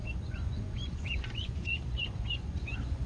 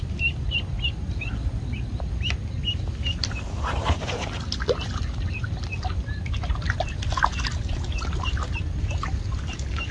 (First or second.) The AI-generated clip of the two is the first